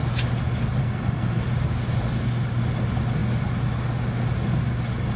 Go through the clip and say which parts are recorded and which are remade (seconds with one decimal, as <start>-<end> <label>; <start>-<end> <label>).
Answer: 0.0-0.8 recorded; 0.8-1.4 remade; 1.4-5.2 recorded